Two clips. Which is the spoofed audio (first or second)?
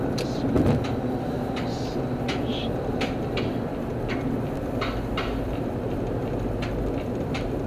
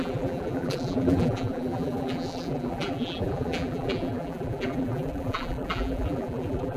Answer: second